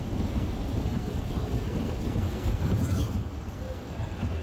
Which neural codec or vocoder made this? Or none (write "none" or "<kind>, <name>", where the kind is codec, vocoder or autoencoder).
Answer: codec, SNAC